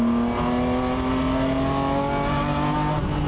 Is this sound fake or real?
real